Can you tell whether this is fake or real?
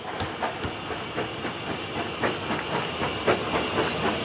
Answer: real